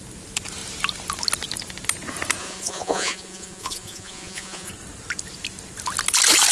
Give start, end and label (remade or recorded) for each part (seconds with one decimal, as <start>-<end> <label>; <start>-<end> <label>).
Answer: 0.0-2.4 recorded; 2.4-4.7 remade; 4.7-6.5 recorded